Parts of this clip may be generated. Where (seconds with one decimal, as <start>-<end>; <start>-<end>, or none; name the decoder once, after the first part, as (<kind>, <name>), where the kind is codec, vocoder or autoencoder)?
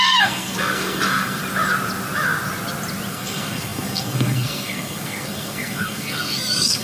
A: 0.0-1.4 (codec, SNAC); 3.1-6.8